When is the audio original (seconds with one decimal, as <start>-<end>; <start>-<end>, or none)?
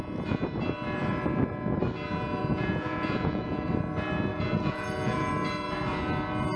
0.0-2.4; 3.7-4.3; 5.3-6.6